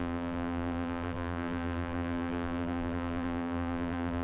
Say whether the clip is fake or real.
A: fake